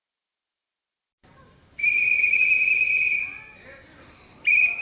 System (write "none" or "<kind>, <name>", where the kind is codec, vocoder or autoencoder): vocoder, BigVGAN v2